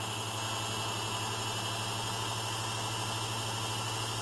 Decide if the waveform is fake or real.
real